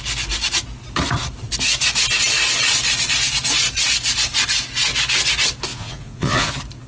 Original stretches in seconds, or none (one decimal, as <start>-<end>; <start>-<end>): 0.0-5.7; 6.5-6.9